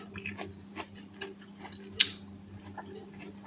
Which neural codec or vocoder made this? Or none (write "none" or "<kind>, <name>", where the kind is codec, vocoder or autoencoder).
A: none